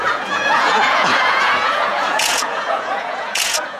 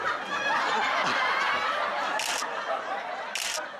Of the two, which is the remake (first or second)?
first